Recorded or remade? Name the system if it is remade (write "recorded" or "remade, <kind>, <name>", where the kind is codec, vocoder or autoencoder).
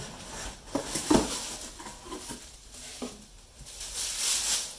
recorded